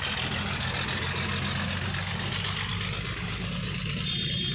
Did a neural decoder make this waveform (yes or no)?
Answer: no